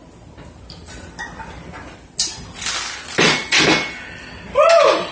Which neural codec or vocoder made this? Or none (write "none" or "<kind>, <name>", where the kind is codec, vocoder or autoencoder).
none